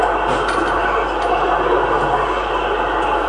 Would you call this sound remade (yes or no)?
no